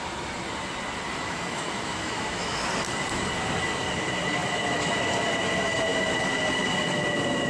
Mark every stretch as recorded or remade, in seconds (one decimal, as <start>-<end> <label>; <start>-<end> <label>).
0.0-1.1 recorded; 1.1-2.7 remade; 2.7-4.4 recorded; 4.4-4.9 remade; 4.9-7.5 recorded